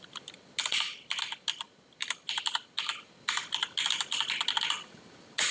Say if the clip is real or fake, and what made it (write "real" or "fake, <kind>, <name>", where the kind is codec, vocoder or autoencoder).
real